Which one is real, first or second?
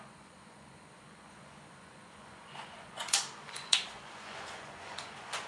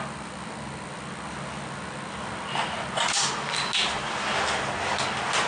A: second